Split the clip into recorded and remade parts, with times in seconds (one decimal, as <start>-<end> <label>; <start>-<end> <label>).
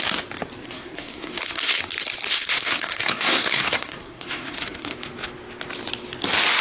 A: 0.0-0.6 recorded; 0.6-1.8 remade; 1.8-2.3 recorded; 2.3-4.9 remade; 4.9-6.6 recorded